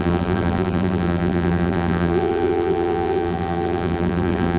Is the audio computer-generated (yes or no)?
yes